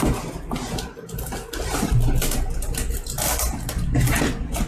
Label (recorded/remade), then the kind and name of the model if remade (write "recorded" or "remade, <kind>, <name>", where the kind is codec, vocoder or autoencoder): recorded